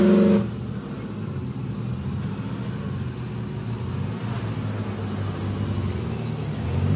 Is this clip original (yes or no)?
yes